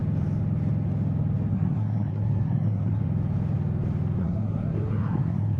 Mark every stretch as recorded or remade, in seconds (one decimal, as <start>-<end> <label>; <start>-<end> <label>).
0.0-1.5 recorded; 1.5-3.0 remade; 3.0-4.2 recorded; 4.2-5.6 remade